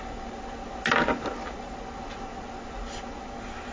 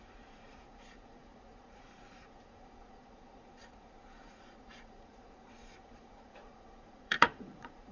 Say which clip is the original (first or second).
first